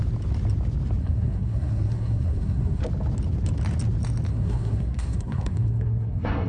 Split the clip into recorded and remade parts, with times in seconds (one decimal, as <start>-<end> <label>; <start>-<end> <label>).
0.0-1.0 recorded; 1.0-2.8 remade; 2.8-4.3 recorded; 4.3-6.5 remade